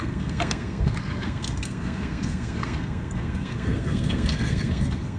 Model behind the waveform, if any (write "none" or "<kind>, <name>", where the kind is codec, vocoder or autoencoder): codec, SNAC